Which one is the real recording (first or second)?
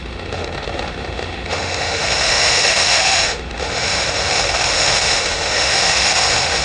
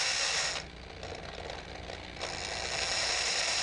second